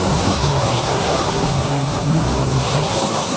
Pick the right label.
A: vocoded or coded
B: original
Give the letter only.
A